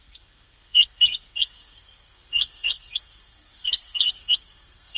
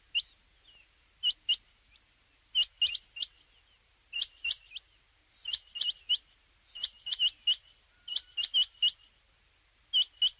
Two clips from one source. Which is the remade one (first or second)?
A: first